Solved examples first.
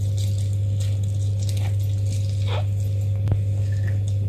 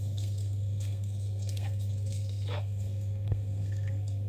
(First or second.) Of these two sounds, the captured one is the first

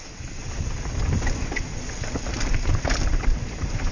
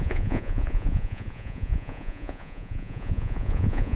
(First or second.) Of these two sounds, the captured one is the first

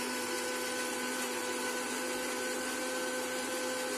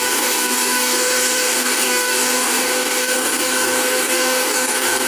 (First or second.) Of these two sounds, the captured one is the first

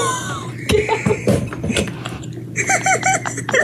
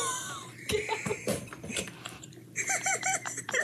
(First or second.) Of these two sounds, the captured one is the first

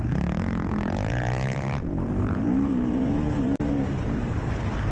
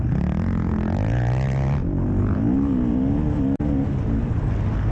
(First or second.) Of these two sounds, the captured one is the second